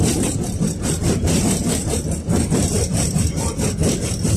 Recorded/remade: remade